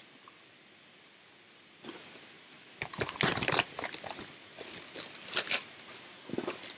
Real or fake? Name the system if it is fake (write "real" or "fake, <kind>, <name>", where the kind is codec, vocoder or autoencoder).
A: real